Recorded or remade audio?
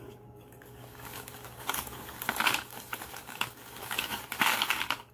remade